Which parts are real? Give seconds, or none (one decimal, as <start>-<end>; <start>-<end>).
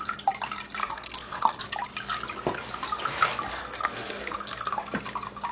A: 0.0-0.8; 1.6-3.5; 4.9-5.5